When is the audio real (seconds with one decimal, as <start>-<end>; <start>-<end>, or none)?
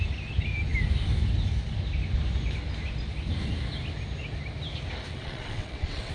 0.0-5.1